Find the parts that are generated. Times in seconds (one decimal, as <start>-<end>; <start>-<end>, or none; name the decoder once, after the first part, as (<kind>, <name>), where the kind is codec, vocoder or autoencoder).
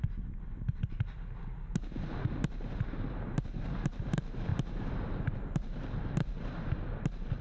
4.5-5.5 (vocoder, BigVGAN v2)